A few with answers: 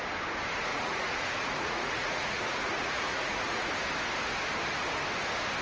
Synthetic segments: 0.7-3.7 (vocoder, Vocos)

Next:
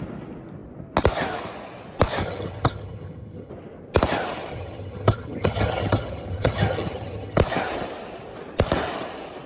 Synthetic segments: 2.2-3.5 (vocoder, HiFi-GAN); 4.5-7.4

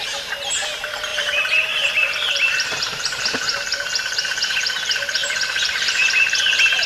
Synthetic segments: 1.1-3.2 (vocoder, BigVGAN v2); 5.2-6.1